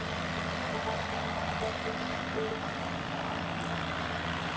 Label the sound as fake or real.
real